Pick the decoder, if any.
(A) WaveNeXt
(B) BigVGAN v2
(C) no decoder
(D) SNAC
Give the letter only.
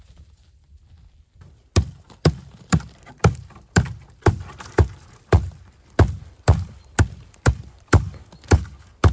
B